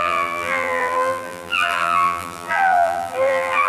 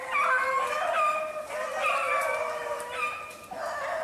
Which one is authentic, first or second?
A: second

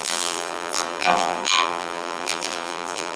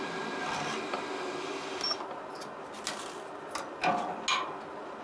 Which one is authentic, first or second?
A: second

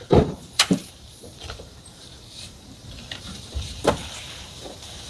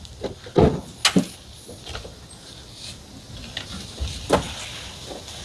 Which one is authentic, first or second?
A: second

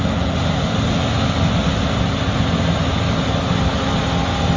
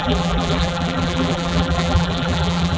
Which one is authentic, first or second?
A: first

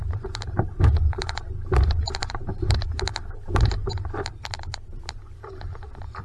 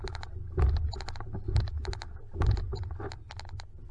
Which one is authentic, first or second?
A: second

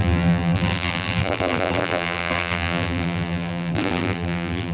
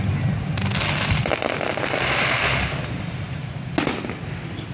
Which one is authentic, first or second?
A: second